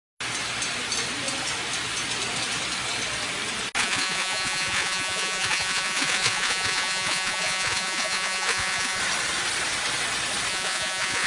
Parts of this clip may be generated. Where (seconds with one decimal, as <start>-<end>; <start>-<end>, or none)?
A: 3.8-9.0; 10.5-11.3